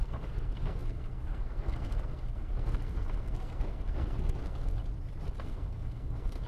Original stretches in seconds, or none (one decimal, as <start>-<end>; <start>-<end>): 4.8-5.4